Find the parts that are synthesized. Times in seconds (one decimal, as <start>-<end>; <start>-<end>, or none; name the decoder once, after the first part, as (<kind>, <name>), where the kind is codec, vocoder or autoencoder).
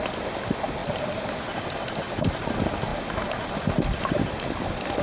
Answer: none